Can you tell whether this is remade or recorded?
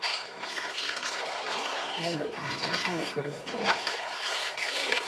remade